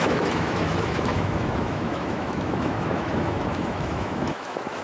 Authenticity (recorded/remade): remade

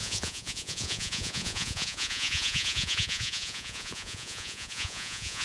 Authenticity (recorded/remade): remade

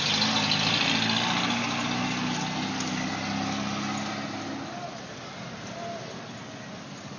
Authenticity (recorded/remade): recorded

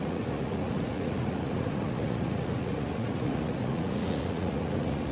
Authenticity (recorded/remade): remade